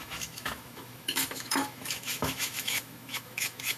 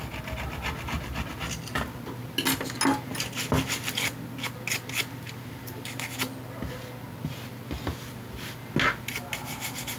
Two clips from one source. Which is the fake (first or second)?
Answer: first